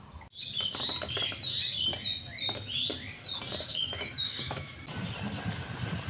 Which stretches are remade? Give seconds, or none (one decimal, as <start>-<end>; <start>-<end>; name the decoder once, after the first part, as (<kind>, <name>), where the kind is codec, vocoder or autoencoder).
3.7-4.8 (autoencoder, DAC-VAE)